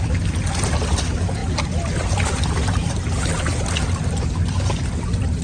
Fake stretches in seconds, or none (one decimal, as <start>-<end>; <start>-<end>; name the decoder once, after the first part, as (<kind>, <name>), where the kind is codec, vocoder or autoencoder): none